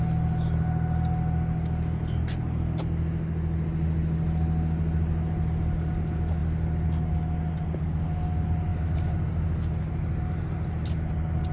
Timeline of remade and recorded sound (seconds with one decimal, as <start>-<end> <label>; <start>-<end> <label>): 0.0-11.5 recorded